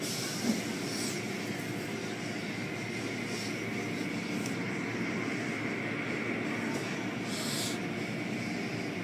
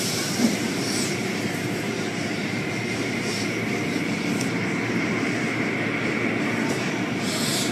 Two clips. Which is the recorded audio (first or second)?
first